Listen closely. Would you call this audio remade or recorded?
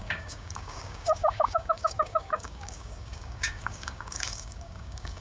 remade